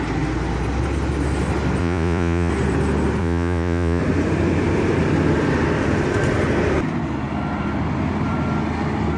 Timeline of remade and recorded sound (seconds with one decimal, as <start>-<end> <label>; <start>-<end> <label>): 0.0-1.8 recorded; 1.8-2.5 remade; 2.5-3.2 recorded; 3.2-4.0 remade; 4.0-9.2 recorded

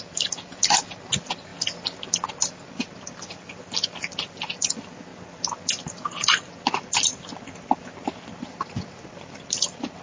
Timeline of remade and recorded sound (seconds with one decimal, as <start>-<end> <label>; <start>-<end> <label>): 0.0-1.5 remade; 1.5-2.7 recorded; 2.7-5.1 remade; 5.1-8.4 recorded; 8.4-10.0 remade

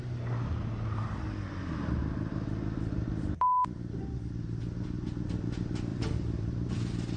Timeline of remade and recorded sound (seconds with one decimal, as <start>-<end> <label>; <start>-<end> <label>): 0.0-5.9 recorded; 5.9-6.7 remade; 6.7-7.2 recorded

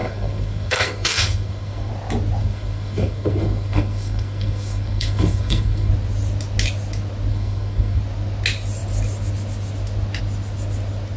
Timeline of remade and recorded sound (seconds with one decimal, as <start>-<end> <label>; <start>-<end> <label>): 0.0-1.9 remade; 1.9-2.4 recorded; 2.4-5.9 remade; 5.9-7.3 recorded; 7.3-8.0 remade; 8.0-11.2 recorded

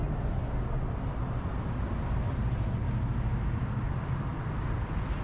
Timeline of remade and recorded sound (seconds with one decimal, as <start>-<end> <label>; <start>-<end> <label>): 0.0-4.3 recorded; 4.3-5.2 remade

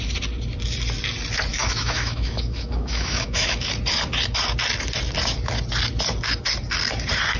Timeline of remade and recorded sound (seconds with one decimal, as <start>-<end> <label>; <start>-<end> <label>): 0.0-1.5 recorded; 1.5-3.7 remade; 3.7-7.4 recorded

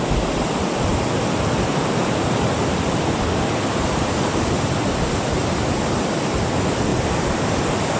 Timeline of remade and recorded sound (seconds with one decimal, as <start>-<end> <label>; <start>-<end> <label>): 0.0-5.4 recorded; 5.4-6.0 remade; 6.0-6.9 recorded; 6.9-7.5 remade; 7.5-8.0 recorded

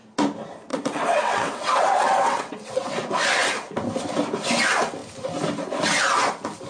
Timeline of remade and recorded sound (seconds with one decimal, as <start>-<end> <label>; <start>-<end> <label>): 0.0-0.7 recorded; 0.7-2.9 remade; 2.9-6.7 recorded